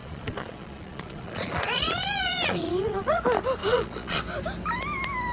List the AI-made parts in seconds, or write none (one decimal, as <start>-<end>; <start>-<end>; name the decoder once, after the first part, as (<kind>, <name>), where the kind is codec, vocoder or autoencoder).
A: 0.0-3.2 (vocoder, Vocos); 3.6-4.2